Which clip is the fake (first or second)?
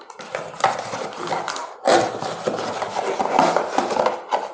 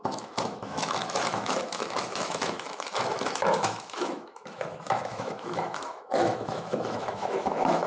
second